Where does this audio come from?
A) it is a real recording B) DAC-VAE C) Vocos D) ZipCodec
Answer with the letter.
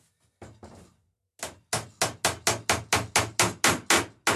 A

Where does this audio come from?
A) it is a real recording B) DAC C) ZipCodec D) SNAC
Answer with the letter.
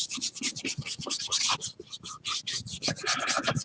A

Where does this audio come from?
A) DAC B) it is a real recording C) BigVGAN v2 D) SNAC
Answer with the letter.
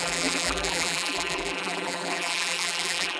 C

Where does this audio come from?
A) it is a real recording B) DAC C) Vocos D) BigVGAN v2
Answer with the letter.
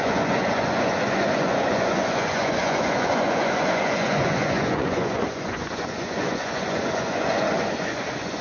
C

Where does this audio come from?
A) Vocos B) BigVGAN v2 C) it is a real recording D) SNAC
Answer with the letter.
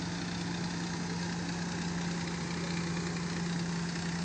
C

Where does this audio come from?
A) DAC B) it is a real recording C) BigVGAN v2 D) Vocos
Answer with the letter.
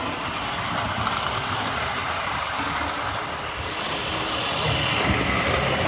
B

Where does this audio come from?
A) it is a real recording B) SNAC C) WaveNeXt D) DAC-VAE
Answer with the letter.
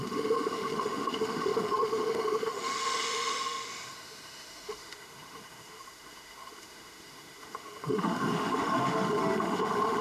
D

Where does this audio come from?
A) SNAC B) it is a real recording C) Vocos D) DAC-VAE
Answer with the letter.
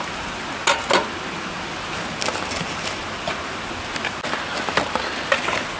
B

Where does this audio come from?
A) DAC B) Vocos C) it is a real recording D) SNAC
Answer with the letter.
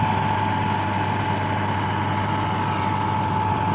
C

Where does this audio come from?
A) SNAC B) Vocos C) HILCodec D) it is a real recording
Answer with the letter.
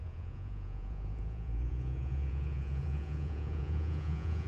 B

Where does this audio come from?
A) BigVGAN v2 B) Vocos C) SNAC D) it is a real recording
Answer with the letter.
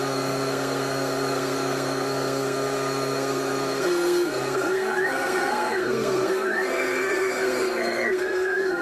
C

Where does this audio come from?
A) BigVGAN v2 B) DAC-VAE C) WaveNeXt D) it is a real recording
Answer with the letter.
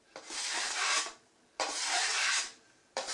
A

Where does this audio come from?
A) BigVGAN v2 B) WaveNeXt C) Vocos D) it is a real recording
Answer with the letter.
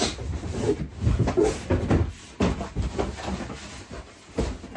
D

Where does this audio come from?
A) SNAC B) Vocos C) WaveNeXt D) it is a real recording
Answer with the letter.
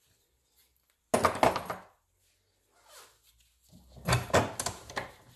D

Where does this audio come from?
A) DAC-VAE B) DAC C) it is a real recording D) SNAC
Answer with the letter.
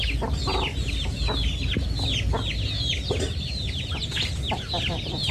C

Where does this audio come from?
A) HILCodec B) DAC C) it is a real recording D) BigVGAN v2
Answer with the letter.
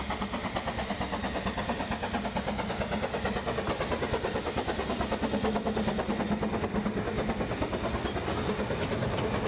C